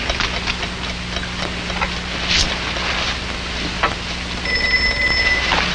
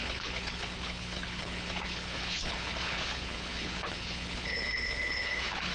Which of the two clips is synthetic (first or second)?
second